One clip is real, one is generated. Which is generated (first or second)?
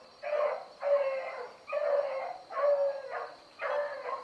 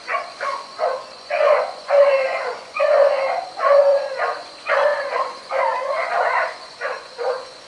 second